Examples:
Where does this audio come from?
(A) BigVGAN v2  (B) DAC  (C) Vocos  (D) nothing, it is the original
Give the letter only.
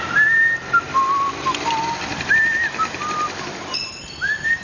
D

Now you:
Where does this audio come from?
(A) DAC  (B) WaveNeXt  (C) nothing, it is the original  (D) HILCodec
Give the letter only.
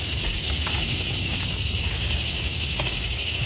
A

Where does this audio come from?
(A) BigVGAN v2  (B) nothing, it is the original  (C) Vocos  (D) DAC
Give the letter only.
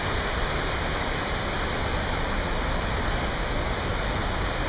B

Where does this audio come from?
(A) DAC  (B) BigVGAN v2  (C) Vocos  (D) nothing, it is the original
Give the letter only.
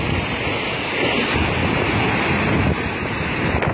D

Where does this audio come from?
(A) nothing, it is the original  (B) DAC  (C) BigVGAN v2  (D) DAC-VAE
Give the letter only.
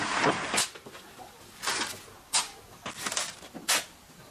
A